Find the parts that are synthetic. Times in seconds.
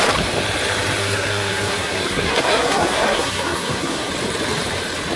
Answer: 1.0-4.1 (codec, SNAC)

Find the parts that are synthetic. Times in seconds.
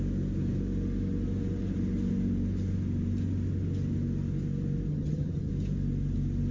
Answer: 4.9-5.5 (vocoder, HiFi-GAN)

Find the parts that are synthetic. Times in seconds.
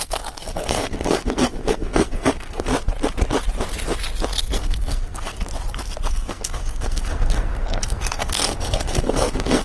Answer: 0.0-2.7 (codec, SNAC); 4.4-5.5; 6.1-9.6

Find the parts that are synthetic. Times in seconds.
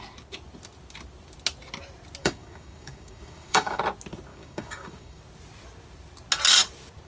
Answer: 2.2-3.8 (codec, DAC); 4.3-5.2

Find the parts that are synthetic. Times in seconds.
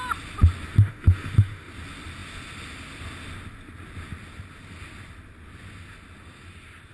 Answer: 0.7-1.7 (autoencoder, DAC-VAE)